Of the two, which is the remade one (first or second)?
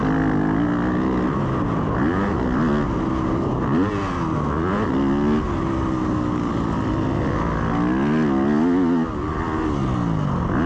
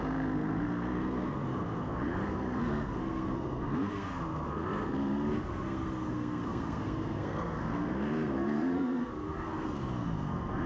second